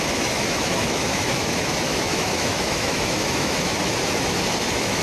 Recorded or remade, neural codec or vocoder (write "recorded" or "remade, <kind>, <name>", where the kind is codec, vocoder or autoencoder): remade, autoencoder, DAC-VAE